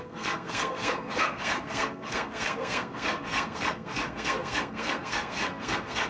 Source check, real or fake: fake